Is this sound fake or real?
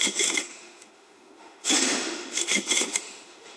fake